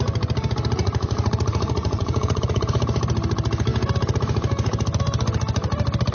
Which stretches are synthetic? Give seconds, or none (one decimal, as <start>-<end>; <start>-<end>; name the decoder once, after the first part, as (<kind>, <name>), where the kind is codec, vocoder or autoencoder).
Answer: 0.8-2.7 (vocoder, Vocos)